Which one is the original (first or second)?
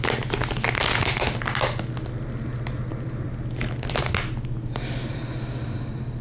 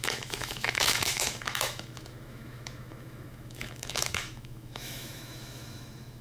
first